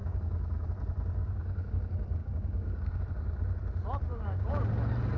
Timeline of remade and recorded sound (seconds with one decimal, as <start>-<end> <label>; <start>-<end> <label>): 0.0-0.7 remade; 0.7-1.2 recorded; 1.2-1.7 remade; 1.7-2.2 recorded; 2.2-3.0 remade; 3.0-4.1 recorded; 4.1-4.6 remade; 4.6-5.2 recorded